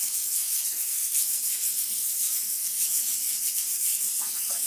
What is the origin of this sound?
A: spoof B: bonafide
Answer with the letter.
A